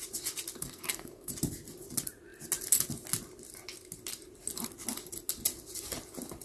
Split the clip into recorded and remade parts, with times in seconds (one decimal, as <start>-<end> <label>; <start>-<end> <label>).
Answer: 0.0-0.6 recorded; 0.6-1.3 remade; 1.3-6.4 recorded